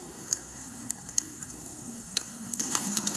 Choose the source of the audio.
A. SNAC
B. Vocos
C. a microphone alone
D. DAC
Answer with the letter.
A